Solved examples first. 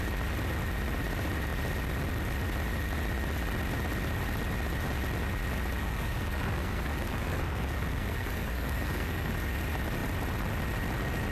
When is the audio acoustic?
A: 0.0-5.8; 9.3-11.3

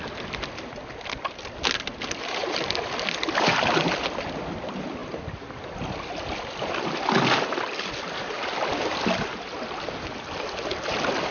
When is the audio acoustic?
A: 0.0-11.3

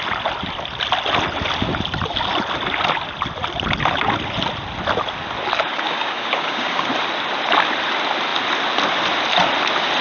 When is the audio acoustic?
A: 0.0-5.7; 6.9-10.0

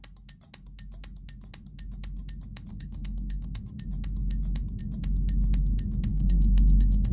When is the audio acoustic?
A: 0.0-2.7; 3.6-6.1

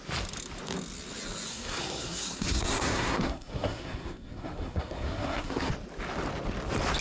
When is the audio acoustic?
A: 0.0-1.5; 5.7-7.0

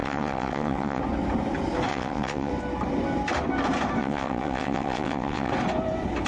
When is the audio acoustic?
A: 1.0-1.9; 2.5-4.0; 5.5-6.3